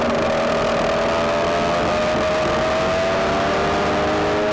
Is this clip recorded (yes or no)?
yes